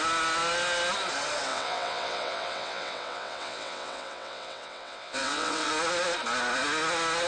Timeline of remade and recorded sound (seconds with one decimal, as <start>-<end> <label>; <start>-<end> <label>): 0.0-1.5 recorded; 1.5-5.7 remade; 5.7-7.3 recorded